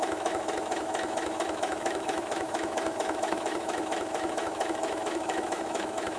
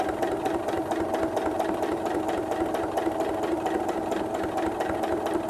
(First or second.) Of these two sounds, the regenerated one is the first